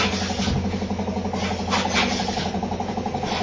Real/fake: real